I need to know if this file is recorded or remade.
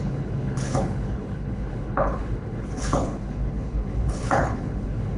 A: remade